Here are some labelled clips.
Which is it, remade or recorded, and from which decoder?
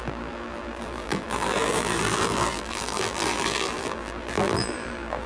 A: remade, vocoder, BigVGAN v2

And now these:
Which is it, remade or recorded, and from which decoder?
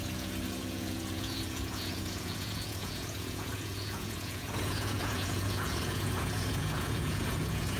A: remade, vocoder, Vocos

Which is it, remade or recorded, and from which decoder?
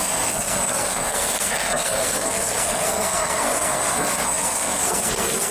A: remade, codec, SNAC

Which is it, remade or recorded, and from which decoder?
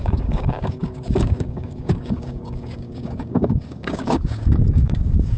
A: remade, codec, DAC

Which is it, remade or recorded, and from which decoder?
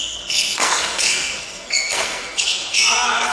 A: remade, codec, SNAC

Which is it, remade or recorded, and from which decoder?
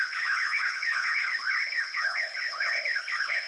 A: remade, codec, HILCodec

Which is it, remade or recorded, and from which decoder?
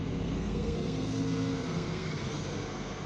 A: remade, codec, SNAC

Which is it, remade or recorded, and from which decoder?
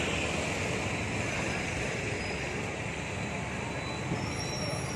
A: recorded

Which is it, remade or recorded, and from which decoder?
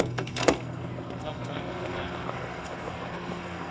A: remade, codec, SNAC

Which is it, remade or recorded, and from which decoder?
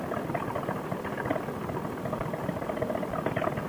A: recorded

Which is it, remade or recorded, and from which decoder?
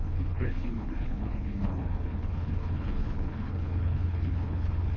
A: remade, codec, HILCodec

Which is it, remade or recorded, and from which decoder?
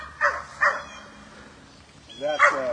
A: recorded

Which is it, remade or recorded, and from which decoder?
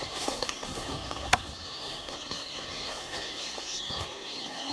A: remade, codec, SNAC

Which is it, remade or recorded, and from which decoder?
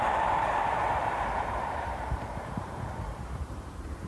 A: remade, vocoder, BigVGAN v2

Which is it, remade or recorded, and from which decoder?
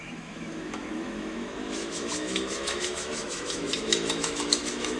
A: remade, autoencoder, DAC-VAE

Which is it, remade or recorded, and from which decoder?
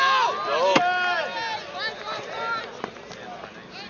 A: recorded